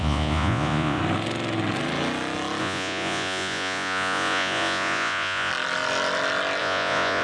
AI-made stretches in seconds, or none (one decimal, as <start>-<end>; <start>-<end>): 0.0-1.0; 2.6-5.5; 6.6-7.2